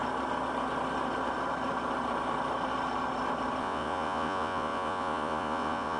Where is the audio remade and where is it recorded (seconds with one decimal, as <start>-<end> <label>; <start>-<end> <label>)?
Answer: 0.0-3.6 recorded; 3.6-6.0 remade